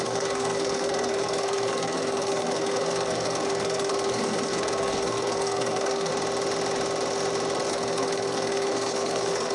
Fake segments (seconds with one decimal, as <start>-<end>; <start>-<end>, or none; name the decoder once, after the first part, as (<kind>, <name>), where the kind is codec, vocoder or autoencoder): 0.0-6.1 (codec, SNAC); 7.7-9.5